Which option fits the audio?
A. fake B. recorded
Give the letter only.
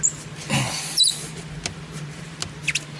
B